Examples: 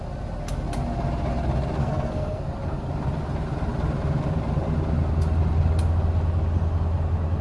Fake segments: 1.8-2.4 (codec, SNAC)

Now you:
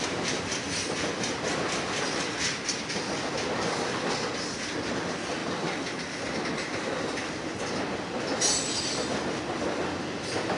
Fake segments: none

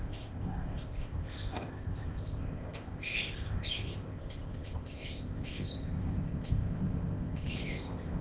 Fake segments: 0.0-8.2 (codec, ZipCodec)